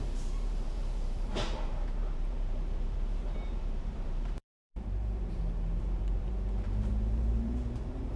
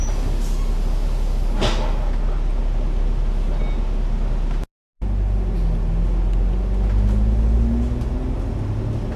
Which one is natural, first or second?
second